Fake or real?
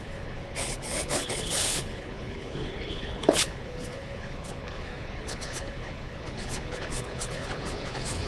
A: fake